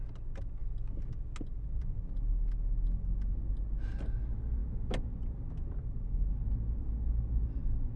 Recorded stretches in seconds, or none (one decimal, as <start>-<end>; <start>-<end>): 0.0-8.0